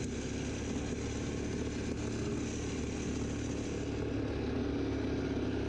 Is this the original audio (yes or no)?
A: yes